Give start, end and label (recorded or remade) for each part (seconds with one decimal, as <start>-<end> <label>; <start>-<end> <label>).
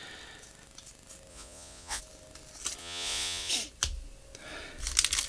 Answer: 0.0-1.3 recorded; 1.3-2.0 remade; 2.0-2.8 recorded; 2.8-3.5 remade; 3.5-5.3 recorded